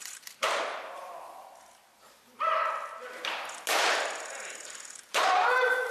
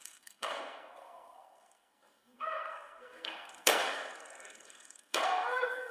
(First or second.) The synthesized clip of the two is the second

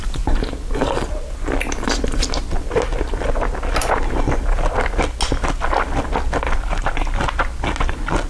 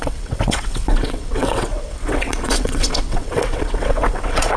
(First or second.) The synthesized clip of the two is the second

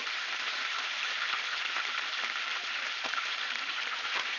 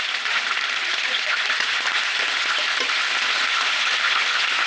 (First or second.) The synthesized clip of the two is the first